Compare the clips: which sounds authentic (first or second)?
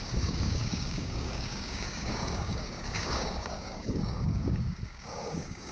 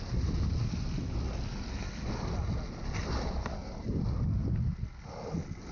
second